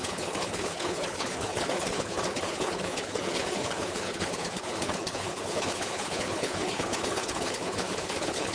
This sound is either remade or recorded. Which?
remade